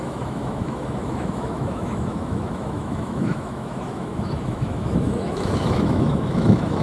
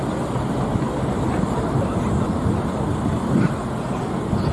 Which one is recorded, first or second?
second